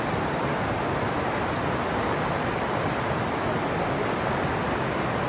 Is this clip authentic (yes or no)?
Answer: yes